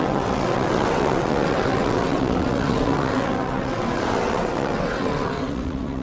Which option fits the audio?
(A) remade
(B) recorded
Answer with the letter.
A